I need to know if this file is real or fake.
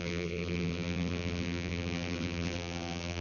fake